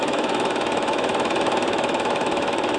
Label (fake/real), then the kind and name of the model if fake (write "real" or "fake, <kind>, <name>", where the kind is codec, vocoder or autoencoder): fake, autoencoder, DAC-VAE